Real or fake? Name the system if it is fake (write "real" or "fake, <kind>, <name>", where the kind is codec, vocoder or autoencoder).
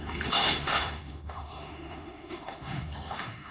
fake, autoencoder, DAC-VAE